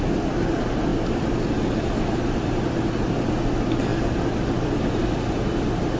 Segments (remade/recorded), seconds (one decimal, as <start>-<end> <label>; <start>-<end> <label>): 0.0-6.0 recorded